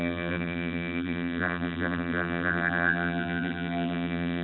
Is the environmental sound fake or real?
fake